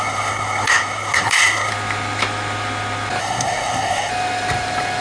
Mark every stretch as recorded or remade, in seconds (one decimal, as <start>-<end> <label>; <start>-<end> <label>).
0.0-1.7 remade; 1.7-3.2 recorded; 3.2-4.1 remade; 4.1-5.0 recorded